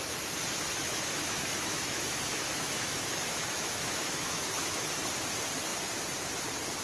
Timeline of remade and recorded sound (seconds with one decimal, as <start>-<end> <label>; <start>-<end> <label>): 0.0-0.8 recorded; 0.8-4.9 remade; 4.9-6.8 recorded